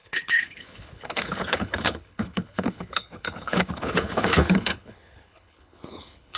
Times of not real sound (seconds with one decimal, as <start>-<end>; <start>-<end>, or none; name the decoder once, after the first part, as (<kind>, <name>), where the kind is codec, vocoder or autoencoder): 0.0-6.4 (codec, HILCodec)